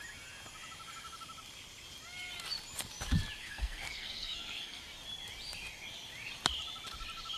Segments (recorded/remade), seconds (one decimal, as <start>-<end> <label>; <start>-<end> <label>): 0.0-3.4 recorded; 3.4-4.8 remade; 4.8-7.4 recorded